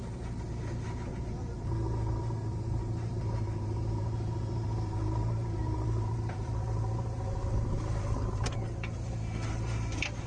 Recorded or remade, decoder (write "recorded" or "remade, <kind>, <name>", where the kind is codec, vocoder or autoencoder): remade, vocoder, BigVGAN v2